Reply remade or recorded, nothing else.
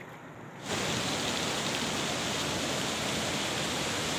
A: recorded